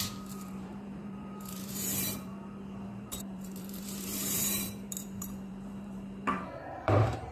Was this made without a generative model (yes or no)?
no